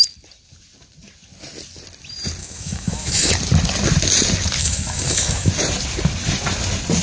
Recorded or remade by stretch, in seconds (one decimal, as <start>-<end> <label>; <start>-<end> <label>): 0.0-2.4 recorded; 2.4-3.3 remade; 3.3-4.6 recorded; 4.6-5.5 remade; 5.5-7.0 recorded